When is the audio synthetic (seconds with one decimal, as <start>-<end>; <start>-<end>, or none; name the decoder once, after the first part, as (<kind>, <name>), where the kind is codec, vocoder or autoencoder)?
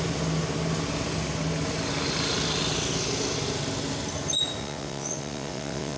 4.6-6.0 (vocoder, WaveNeXt)